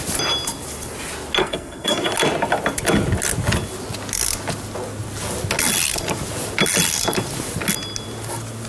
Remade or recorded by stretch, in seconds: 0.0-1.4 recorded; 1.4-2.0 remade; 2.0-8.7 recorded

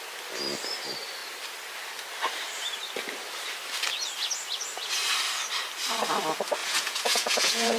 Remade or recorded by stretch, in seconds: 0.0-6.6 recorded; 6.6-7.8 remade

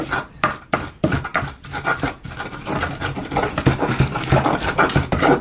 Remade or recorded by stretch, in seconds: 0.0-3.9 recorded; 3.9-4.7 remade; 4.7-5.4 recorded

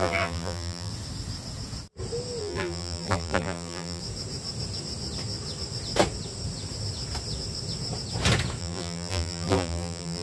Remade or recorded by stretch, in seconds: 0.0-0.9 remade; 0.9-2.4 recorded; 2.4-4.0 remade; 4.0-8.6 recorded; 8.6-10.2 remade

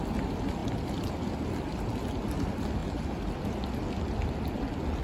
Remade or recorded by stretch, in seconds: 0.0-5.0 recorded